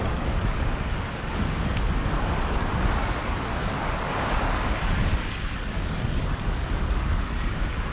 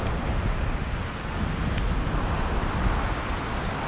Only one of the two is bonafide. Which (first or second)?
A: second